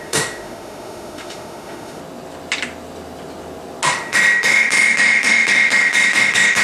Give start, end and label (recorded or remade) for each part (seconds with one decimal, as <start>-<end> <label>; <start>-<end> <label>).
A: 0.0-2.0 remade; 2.0-3.9 recorded; 3.9-6.6 remade